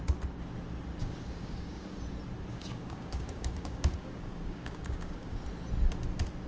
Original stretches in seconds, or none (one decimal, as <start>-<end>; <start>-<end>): 0.0-1.0; 2.0-2.5; 5.4-6.5